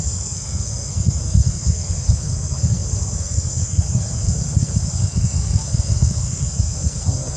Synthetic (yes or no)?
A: yes